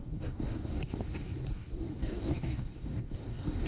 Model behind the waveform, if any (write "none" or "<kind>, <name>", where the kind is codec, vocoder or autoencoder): codec, DAC